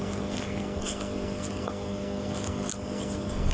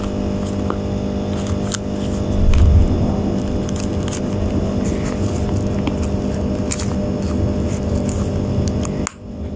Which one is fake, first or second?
first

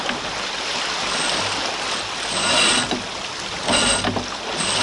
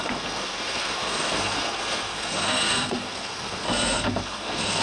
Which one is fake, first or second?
second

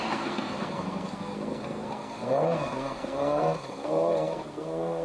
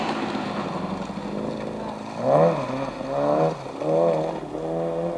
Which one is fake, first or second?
first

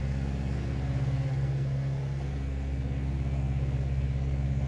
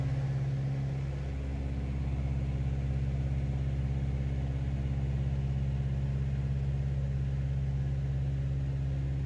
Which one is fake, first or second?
first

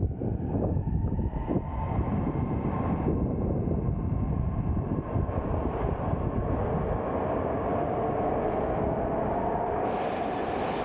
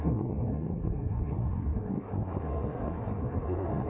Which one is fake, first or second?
second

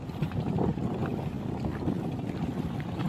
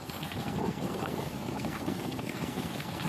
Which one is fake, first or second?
second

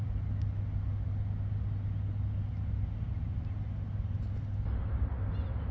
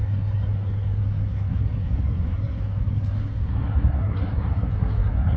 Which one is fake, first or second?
second